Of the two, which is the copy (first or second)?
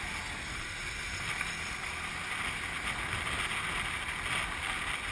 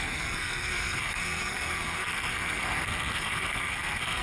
second